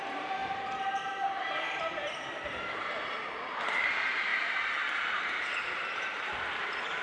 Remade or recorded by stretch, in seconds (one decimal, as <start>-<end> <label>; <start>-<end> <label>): 0.0-7.0 remade